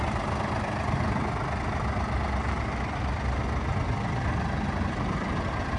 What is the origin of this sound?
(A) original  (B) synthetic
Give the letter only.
A